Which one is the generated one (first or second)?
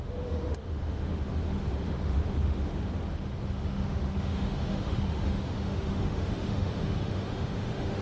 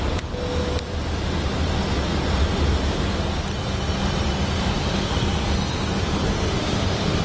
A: first